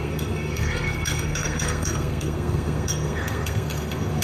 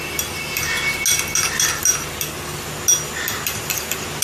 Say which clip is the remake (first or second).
first